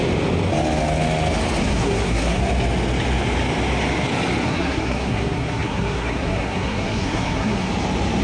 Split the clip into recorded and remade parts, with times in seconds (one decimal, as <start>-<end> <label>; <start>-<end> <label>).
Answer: 0.0-1.6 recorded; 1.6-2.4 remade; 2.4-4.5 recorded; 4.5-7.7 remade; 7.7-8.2 recorded